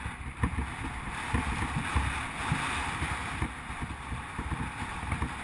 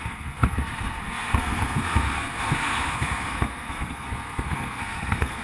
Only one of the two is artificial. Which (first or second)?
second